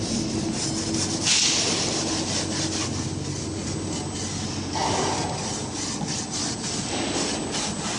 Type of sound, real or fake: real